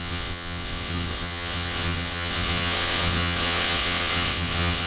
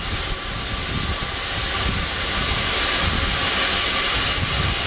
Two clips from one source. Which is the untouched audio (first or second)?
second